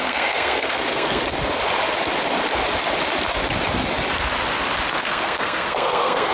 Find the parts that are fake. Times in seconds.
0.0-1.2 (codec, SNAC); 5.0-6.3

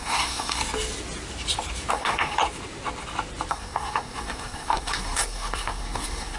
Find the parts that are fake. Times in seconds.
0.0-0.6 (codec, SNAC); 1.9-2.4; 3.5-6.4

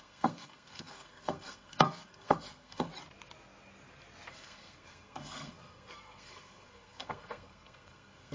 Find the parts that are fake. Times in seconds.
0.0-2.9 (codec, SNAC); 4.3-8.3

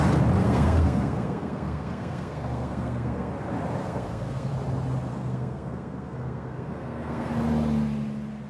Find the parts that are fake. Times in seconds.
0.4-3.3 (codec, SNAC); 3.8-4.5; 5.1-7.3